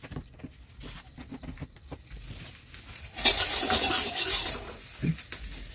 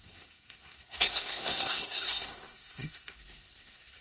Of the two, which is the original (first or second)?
first